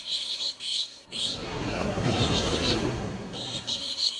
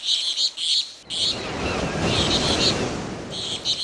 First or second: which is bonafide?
second